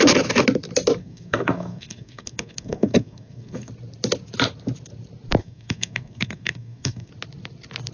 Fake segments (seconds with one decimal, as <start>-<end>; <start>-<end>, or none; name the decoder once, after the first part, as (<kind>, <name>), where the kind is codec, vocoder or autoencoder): 1.0-3.7 (codec, SNAC); 5.4-7.1